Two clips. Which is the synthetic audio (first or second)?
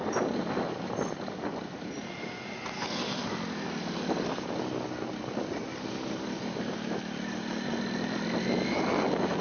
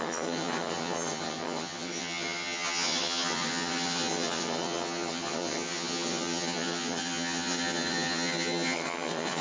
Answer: second